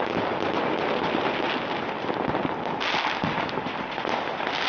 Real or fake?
real